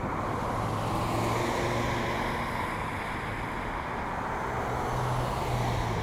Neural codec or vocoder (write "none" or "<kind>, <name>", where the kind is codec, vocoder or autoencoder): none